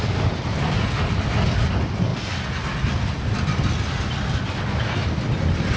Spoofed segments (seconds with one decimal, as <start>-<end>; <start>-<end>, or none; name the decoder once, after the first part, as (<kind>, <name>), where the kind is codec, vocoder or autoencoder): none